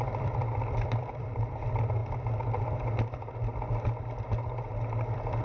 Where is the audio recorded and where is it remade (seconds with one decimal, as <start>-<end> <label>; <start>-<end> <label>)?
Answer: 0.0-2.0 remade; 2.0-5.4 recorded